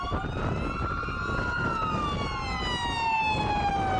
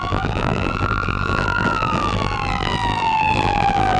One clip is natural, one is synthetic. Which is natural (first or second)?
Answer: first